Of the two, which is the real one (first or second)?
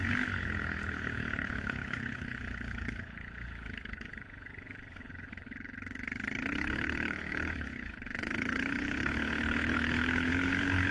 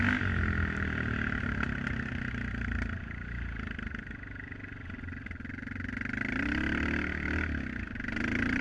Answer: second